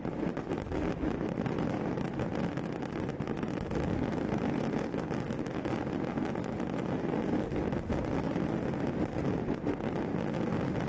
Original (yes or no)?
yes